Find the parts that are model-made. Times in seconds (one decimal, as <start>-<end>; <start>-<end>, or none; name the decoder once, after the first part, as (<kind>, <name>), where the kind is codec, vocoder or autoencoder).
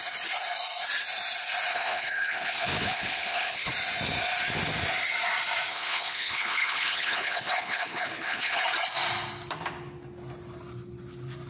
1.7-3.7 (codec, HILCodec); 5.7-8.6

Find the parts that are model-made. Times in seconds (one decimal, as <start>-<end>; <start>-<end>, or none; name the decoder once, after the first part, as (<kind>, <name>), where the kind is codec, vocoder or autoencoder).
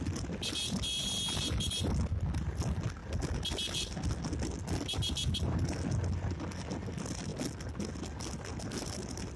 none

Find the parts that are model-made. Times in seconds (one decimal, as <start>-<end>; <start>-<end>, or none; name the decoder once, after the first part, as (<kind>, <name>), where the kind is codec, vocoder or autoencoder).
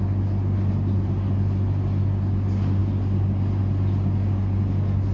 none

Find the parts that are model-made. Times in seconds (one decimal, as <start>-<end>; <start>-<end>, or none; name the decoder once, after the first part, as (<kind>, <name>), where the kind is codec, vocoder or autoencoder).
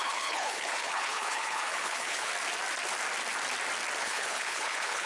0.0-2.3 (codec, HILCodec); 4.0-5.1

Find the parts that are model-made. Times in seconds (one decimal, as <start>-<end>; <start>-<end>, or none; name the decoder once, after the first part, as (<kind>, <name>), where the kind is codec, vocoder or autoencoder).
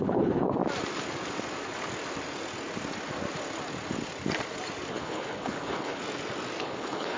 0.0-0.6 (codec, HILCodec); 4.9-6.0; 6.6-7.2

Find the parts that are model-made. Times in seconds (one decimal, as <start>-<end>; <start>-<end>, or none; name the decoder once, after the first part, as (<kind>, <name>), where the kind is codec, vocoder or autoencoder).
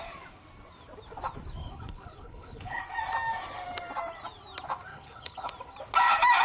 1.6-2.8 (codec, HILCodec); 4.9-5.5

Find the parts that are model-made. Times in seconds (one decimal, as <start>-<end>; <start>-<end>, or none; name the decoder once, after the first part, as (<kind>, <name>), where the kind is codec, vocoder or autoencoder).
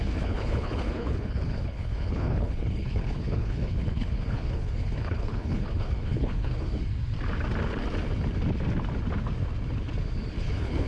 0.0-6.5 (codec, HILCodec); 10.4-10.9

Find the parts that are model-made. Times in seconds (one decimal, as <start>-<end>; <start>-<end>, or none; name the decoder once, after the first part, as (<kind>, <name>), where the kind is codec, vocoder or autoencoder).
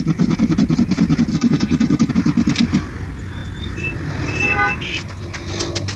1.3-2.1 (codec, HILCodec)